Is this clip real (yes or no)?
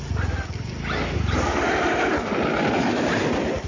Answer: yes